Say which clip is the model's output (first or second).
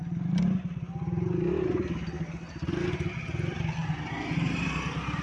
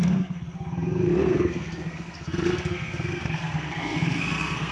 second